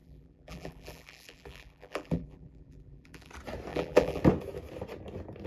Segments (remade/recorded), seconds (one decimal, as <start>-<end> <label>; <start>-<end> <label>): 0.0-3.3 remade; 3.3-3.7 recorded; 3.7-4.2 remade; 4.2-5.5 recorded